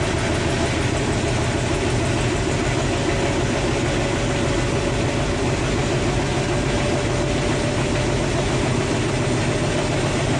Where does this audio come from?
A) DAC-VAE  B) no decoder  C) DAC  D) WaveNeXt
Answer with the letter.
B